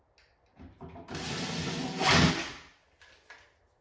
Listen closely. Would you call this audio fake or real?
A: real